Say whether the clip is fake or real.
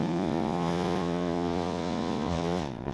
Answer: fake